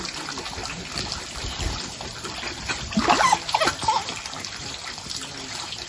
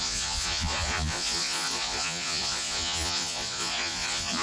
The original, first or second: first